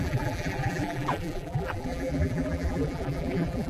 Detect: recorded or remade remade